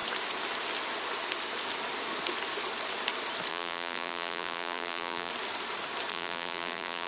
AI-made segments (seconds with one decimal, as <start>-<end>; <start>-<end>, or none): 3.5-5.3; 6.1-7.1